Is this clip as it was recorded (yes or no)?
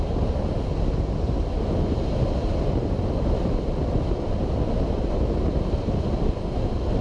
yes